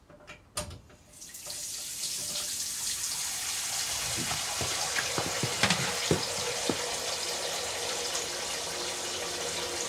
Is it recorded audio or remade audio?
recorded